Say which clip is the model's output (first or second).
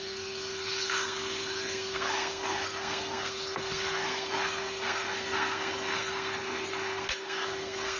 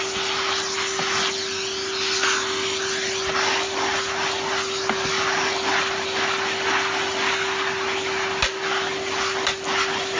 first